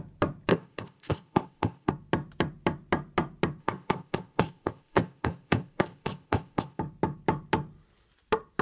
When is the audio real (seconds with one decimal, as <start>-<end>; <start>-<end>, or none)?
0.0-0.5; 1.9-3.6; 6.8-8.6